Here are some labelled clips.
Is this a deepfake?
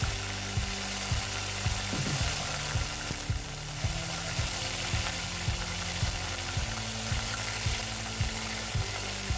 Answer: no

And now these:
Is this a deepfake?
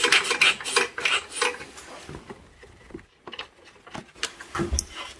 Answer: no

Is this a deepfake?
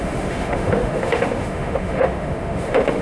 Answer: yes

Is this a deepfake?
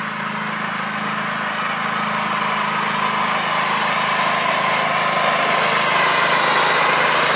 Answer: no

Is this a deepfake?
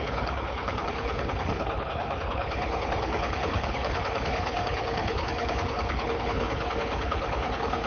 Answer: yes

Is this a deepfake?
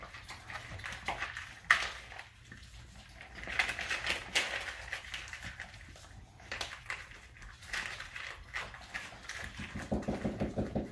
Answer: no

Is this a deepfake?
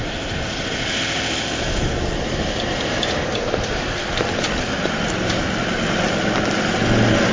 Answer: no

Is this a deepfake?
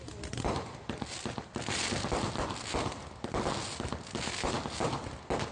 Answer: no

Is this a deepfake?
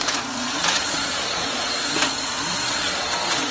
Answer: yes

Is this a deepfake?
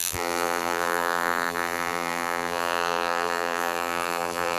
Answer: yes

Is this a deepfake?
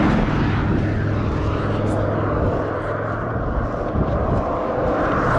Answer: no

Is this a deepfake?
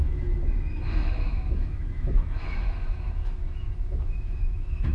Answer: yes